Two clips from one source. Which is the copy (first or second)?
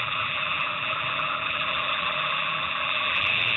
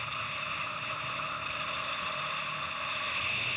first